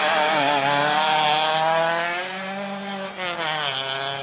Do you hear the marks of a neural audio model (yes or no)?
no